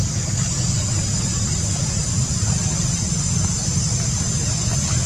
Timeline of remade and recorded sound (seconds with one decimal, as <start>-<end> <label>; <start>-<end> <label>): 0.0-5.1 recorded

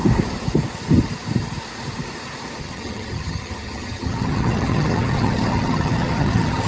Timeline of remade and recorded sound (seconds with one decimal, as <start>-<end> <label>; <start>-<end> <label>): 0.0-2.6 recorded; 2.6-6.7 remade

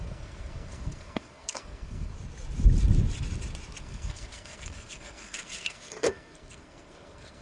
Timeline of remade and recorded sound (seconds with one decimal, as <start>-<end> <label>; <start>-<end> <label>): 0.0-2.1 remade; 2.1-3.8 recorded; 3.8-7.4 remade

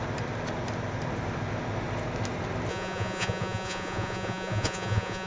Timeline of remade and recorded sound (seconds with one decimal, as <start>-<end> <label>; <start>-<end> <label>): 0.0-2.7 recorded; 2.7-5.3 remade

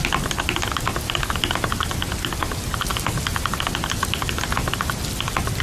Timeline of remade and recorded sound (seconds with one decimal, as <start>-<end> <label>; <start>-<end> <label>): 0.0-5.6 recorded